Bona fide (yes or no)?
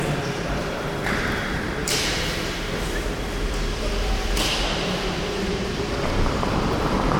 no